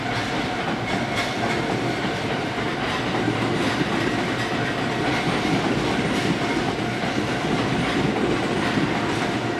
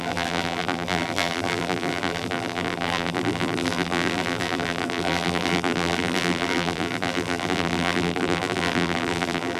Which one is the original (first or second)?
first